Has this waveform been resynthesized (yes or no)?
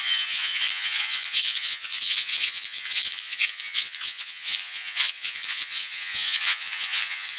yes